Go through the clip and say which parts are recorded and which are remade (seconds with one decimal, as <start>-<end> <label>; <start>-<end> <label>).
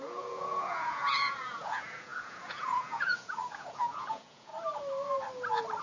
0.0-4.5 remade; 4.5-5.8 recorded